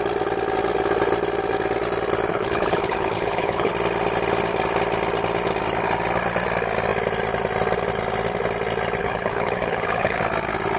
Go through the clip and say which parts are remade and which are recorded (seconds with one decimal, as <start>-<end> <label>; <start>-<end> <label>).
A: 0.0-2.3 recorded; 2.3-3.7 remade; 3.7-9.0 recorded; 9.0-10.2 remade; 10.2-10.8 recorded